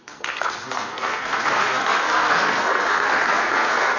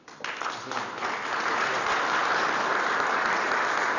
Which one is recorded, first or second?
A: second